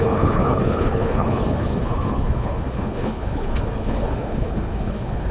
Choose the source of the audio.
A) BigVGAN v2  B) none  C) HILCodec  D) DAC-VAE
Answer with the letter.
C